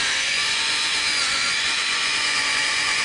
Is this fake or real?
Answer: fake